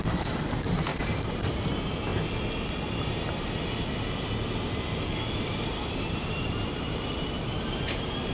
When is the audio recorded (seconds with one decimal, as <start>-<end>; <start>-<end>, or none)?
2.1-5.4